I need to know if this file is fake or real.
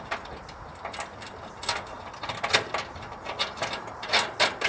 real